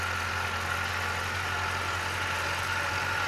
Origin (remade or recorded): recorded